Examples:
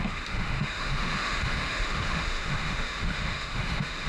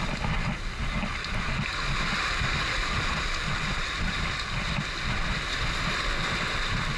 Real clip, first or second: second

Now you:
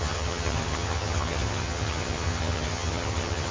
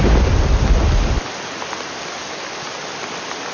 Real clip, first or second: second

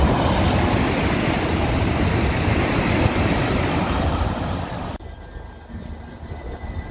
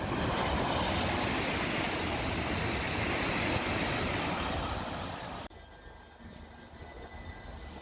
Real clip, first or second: second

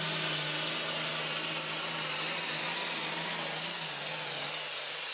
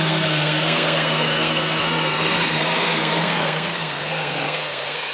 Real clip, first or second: first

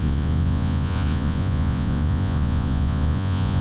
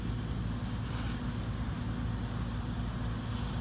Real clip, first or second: second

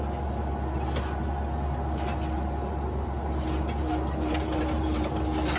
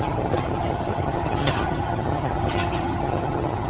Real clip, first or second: first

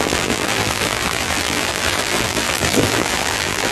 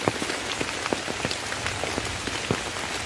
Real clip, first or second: second